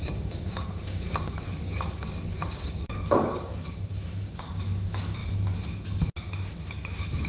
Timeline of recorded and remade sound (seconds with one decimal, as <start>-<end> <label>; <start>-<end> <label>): 0.0-5.2 remade; 5.2-7.3 recorded